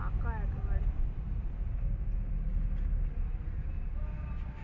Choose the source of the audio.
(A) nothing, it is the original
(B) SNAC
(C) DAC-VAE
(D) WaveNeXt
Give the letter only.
A